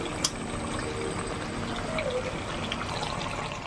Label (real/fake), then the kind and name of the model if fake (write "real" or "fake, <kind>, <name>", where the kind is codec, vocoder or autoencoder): real